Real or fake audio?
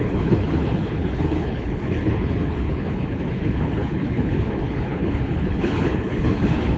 fake